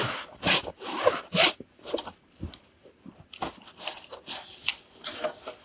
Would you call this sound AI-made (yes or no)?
yes